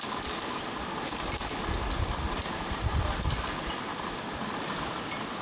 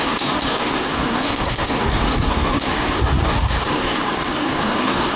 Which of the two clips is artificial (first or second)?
second